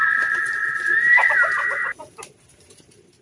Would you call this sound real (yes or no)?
yes